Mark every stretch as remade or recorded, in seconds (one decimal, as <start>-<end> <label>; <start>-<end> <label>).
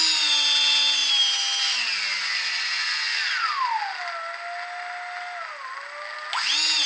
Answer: 0.0-6.9 recorded